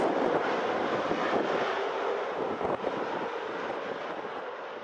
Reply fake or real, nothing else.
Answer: real